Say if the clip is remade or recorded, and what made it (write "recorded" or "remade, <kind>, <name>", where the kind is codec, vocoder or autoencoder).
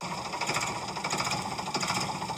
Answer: recorded